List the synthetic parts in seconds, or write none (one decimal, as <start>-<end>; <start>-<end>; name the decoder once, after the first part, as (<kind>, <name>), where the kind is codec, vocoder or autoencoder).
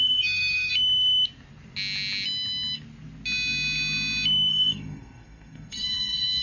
0.0-0.7 (codec, SNAC); 4.5-6.4